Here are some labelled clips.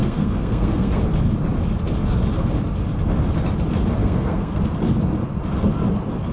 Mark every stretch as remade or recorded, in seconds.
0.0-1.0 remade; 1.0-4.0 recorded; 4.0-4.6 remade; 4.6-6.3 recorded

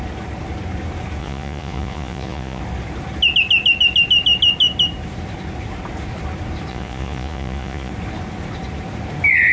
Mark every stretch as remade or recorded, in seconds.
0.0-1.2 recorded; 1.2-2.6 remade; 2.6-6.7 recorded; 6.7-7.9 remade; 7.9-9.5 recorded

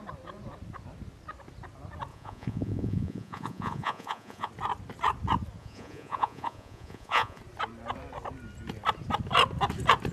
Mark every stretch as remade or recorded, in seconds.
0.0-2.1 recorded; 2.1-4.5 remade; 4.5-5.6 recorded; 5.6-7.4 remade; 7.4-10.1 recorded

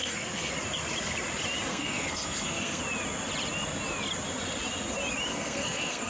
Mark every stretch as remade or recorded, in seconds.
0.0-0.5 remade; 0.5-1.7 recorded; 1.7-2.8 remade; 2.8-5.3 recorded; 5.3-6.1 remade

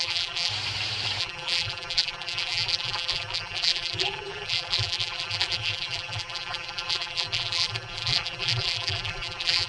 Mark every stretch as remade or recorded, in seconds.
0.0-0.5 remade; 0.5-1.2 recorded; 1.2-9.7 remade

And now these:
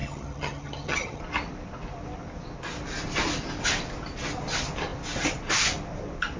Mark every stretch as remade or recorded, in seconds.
0.0-1.2 remade; 1.2-6.4 recorded